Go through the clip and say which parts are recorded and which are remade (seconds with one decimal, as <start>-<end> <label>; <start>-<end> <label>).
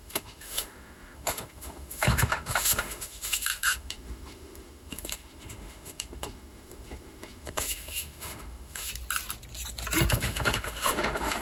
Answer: 0.0-8.9 remade; 8.9-10.1 recorded; 10.1-11.4 remade